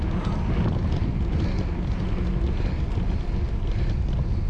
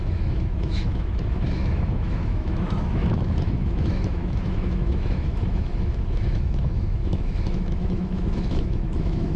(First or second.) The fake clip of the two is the second